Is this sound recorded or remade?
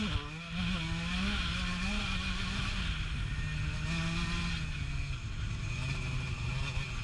recorded